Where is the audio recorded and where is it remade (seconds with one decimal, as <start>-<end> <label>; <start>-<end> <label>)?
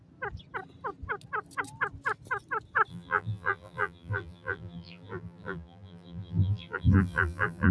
0.0-2.9 recorded; 2.9-7.7 remade